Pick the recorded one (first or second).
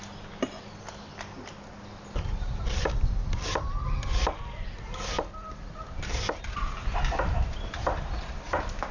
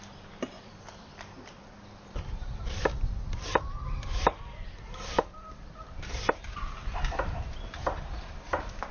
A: first